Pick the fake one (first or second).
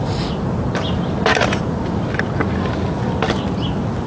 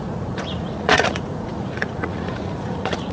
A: second